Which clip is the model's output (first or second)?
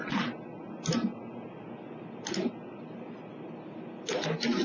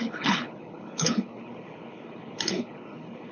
second